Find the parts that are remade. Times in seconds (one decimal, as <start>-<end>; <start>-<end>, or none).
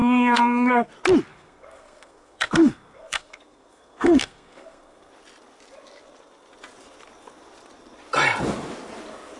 0.0-0.9; 1.3-5.1